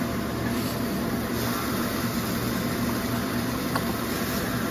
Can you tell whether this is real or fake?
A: real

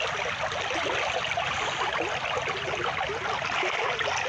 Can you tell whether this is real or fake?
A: real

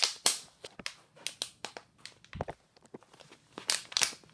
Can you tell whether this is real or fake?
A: real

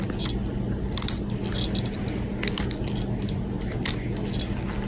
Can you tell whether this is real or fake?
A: real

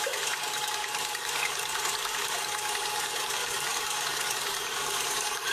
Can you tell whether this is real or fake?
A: fake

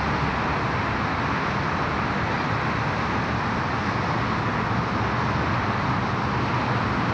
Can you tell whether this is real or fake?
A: real